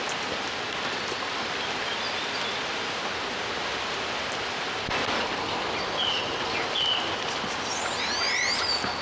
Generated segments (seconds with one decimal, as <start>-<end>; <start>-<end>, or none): none